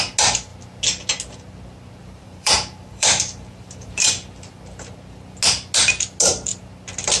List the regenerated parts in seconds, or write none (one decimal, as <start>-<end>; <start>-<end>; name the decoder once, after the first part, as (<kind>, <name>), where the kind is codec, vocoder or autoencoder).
2.0-4.0 (vocoder, BigVGAN v2)